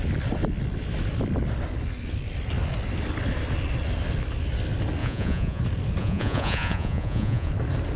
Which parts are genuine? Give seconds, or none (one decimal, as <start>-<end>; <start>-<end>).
0.0-5.0; 5.6-6.0; 7.5-8.0